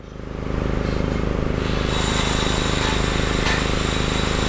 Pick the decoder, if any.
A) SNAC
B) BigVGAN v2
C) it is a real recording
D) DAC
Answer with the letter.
C